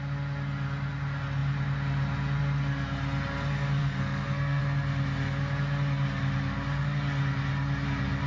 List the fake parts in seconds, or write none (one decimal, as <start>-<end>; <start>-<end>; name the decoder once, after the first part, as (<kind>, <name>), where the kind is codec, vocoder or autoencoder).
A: 3.8-4.6 (codec, SNAC)